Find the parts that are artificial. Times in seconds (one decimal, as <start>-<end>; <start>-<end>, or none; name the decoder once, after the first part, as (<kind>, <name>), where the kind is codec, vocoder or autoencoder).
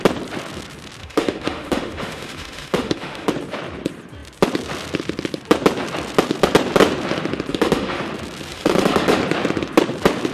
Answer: 1.0-3.3 (autoencoder, DAC-VAE); 7.5-8.0; 8.5-9.2